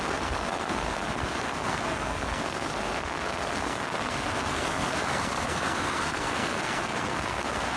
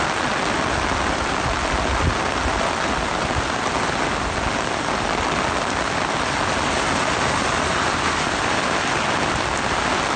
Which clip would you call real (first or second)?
second